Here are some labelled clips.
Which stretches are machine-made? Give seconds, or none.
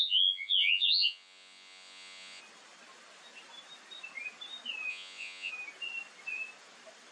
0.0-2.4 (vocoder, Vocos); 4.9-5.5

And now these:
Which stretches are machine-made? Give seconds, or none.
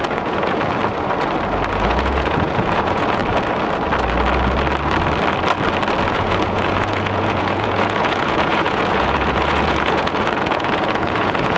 0.0-0.8 (vocoder, Vocos); 1.7-3.2; 6.1-11.6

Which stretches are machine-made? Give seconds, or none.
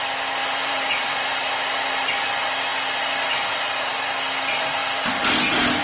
0.4-1.5 (vocoder, BigVGAN v2)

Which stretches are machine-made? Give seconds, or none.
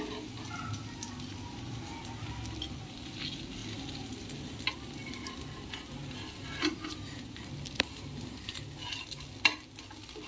none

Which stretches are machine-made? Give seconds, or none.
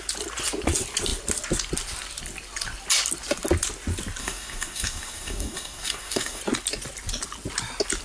4.2-6.4 (codec, DAC)